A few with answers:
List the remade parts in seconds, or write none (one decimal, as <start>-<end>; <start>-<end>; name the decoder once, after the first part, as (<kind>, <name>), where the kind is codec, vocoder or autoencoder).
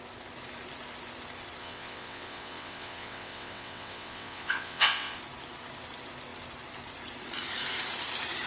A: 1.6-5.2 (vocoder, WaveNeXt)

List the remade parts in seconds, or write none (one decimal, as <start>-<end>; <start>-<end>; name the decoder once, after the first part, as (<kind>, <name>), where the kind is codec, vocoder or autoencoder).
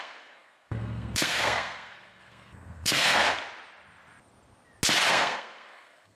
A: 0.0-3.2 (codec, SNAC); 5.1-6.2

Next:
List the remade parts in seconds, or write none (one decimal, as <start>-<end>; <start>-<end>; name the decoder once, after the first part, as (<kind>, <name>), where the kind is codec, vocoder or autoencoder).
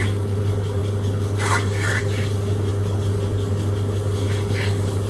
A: 0.0-5.1 (codec, DAC)